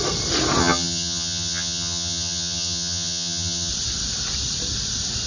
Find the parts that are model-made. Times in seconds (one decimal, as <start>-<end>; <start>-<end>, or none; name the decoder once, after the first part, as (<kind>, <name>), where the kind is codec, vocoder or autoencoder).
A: 0.6-3.7 (vocoder, HiFi-GAN)

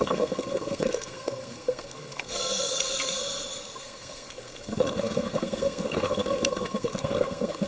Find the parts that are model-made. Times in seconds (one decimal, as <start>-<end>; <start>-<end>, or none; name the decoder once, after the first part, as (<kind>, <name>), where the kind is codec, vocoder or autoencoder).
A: 0.0-3.2 (codec, SNAC); 3.8-7.7